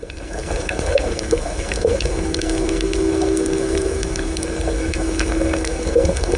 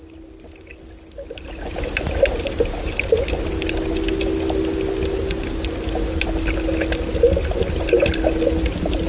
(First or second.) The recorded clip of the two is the second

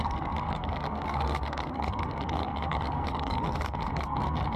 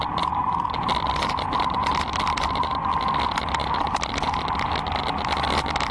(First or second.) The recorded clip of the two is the second